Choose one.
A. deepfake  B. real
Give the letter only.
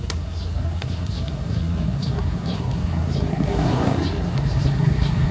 A